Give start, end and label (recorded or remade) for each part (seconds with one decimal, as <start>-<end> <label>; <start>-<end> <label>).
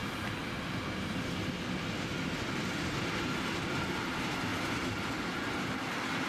0.0-6.3 recorded